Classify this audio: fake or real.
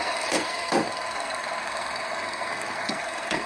fake